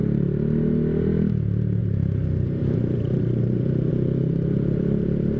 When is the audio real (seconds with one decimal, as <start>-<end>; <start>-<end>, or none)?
0.0-1.8; 3.9-5.4